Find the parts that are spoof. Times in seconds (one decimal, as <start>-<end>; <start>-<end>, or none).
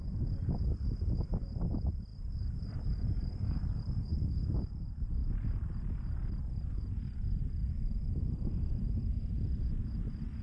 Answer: 2.1-2.8; 7.6-8.8